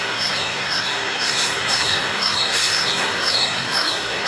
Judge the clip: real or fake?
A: fake